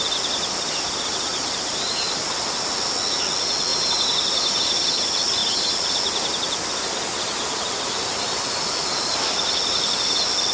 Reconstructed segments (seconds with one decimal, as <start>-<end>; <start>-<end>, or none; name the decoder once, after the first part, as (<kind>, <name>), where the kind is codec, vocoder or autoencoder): 3.7-4.9 (vocoder, BigVGAN v2)